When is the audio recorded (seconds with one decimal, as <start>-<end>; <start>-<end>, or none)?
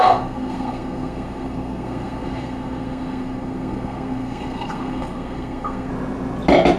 5.9-6.8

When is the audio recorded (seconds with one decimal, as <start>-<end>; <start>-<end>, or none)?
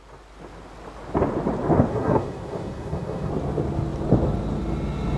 0.0-1.9; 3.3-5.2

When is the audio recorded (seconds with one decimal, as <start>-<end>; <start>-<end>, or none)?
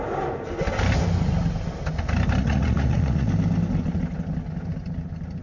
0.0-2.4; 3.3-5.4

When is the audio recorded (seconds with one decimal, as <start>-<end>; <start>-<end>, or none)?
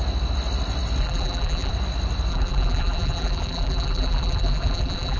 0.0-1.0; 1.7-2.3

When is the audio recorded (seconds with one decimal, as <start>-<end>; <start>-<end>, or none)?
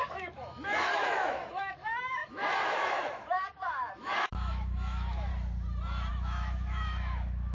5.3-6.1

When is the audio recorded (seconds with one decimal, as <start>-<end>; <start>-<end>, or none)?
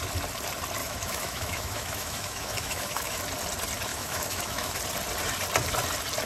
0.0-0.8; 3.2-3.9; 4.8-6.3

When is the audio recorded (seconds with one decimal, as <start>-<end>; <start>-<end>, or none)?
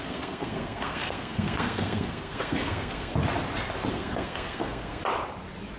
3.1-3.9; 5.0-5.8